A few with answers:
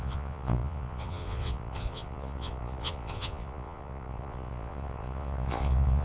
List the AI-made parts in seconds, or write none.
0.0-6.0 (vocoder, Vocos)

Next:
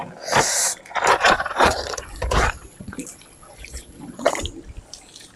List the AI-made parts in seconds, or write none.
1.2-4.4 (vocoder, Vocos)

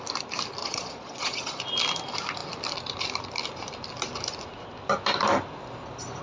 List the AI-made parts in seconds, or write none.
0.6-1.6 (vocoder, Vocos)

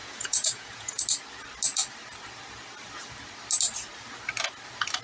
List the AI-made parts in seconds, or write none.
0.0-1.0 (vocoder, Vocos)